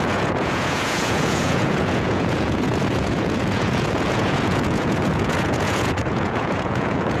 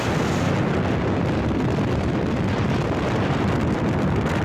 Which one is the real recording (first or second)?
second